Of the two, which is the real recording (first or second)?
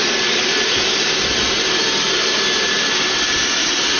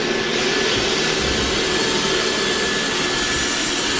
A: second